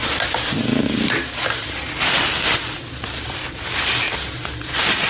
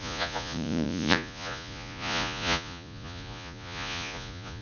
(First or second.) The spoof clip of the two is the second